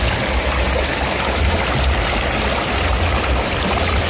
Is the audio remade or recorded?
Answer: recorded